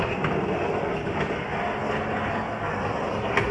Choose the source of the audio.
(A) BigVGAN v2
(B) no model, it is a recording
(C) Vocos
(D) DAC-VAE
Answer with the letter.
B